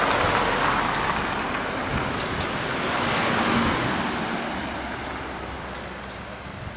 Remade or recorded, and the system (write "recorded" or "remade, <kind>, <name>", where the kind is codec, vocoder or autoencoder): recorded